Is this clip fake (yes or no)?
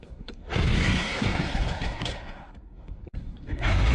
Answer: yes